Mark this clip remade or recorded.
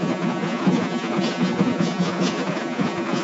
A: remade